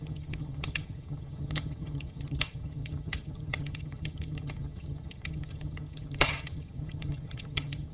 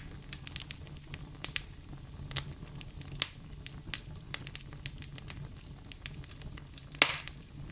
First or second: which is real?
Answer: second